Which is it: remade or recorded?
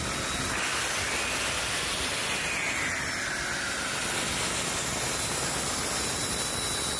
recorded